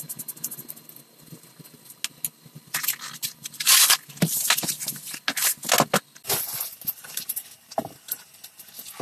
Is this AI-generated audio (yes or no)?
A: no